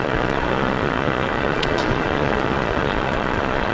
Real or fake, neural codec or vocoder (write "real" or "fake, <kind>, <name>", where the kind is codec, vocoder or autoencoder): fake, vocoder, Vocos